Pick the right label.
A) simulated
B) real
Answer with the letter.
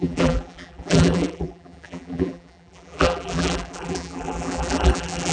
A